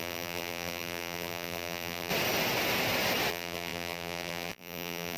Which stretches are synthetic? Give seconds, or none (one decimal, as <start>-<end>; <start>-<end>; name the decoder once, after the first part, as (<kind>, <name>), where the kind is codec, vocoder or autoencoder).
0.0-2.1 (vocoder, BigVGAN v2); 3.3-5.2